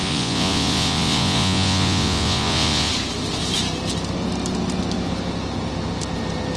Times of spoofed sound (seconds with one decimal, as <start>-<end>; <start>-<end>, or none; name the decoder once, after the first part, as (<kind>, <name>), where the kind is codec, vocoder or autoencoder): 0.0-2.9 (vocoder, Vocos)